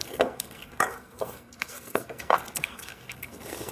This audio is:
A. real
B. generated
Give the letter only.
B